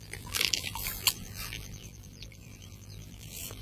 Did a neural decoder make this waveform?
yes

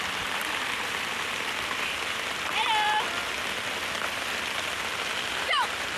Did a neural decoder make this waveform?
yes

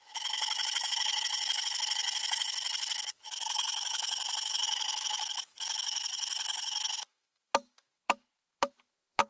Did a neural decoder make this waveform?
yes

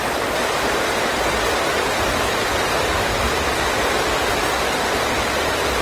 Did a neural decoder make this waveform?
yes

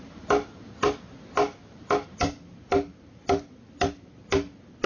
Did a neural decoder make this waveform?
no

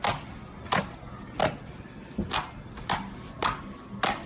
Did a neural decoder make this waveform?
no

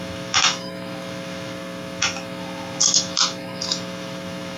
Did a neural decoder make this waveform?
yes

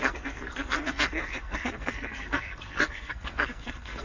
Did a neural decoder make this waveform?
yes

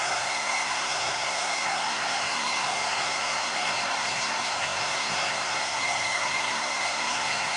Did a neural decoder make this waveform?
yes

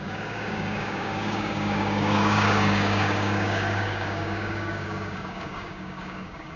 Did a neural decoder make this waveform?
yes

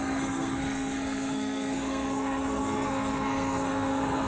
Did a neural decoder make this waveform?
yes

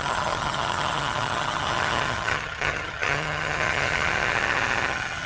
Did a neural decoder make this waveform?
yes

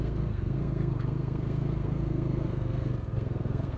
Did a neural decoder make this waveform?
yes